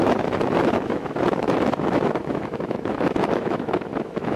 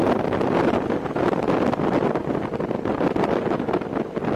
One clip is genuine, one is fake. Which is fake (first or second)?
first